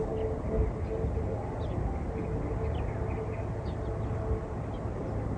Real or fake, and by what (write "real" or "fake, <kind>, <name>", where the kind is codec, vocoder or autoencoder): real